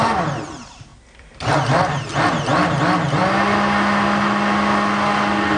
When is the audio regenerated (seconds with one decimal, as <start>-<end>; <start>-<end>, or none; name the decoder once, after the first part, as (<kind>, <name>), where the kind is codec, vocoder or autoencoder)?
none